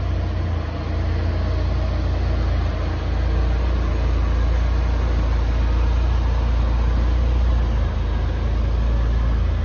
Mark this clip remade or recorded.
recorded